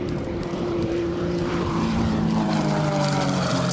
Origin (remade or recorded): remade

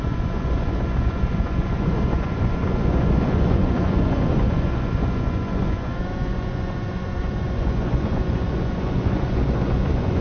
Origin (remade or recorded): remade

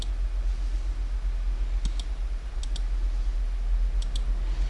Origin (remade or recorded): recorded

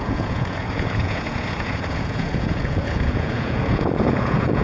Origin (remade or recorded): remade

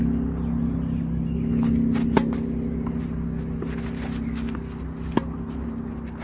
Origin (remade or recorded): recorded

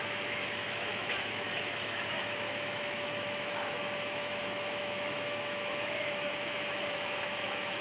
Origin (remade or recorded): remade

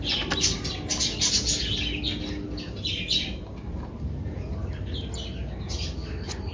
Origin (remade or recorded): recorded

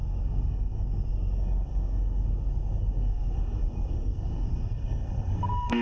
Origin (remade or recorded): remade